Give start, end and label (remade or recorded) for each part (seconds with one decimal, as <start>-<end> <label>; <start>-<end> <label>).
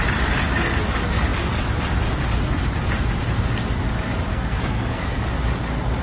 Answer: 0.0-4.3 recorded; 4.3-5.2 remade; 5.2-6.0 recorded